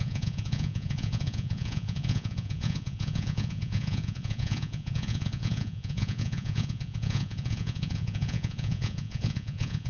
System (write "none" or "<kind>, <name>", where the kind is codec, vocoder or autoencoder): vocoder, Vocos